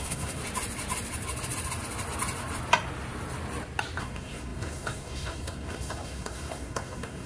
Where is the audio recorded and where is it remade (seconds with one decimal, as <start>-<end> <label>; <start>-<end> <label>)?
0.0-0.4 remade; 0.4-4.0 recorded; 4.0-7.3 remade